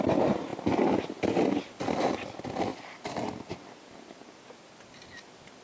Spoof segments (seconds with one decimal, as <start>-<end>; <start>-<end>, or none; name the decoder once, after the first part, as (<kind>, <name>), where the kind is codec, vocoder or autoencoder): none

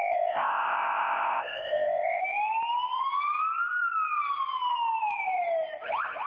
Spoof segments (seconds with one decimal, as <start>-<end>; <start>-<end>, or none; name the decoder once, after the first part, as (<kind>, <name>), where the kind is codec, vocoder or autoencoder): 0.0-2.2 (codec, ZipCodec)